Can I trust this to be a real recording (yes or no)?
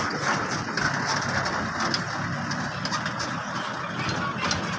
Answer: yes